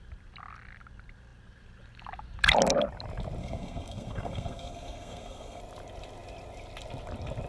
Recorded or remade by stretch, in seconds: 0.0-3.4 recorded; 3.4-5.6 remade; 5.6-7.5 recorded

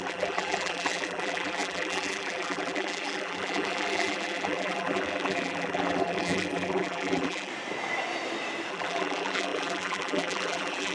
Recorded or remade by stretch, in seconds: 0.0-7.5 remade; 7.5-8.7 recorded; 8.7-10.9 remade

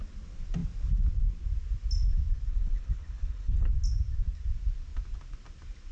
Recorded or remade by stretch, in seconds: 0.0-2.5 recorded; 2.5-3.7 remade; 3.7-5.9 recorded

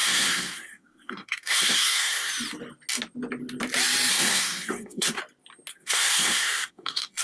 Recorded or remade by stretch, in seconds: 0.0-2.3 remade; 2.3-4.1 recorded; 4.1-5.2 remade; 5.2-5.7 recorded; 5.7-7.2 remade

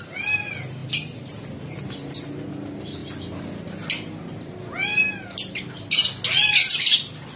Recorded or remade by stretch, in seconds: 0.0-7.4 recorded

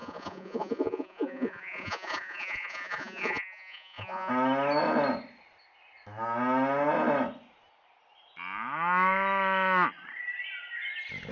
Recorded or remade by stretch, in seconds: 0.0-4.3 remade; 4.3-11.3 recorded

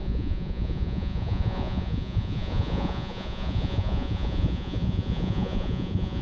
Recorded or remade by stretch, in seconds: 0.0-6.2 remade

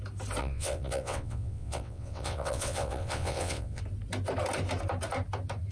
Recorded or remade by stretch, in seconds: 0.0-0.4 recorded; 0.4-3.8 remade; 3.8-5.7 recorded